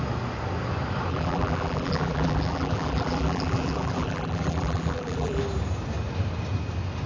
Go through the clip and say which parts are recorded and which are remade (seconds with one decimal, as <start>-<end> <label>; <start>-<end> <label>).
0.0-1.1 recorded; 1.1-5.4 remade; 5.4-7.1 recorded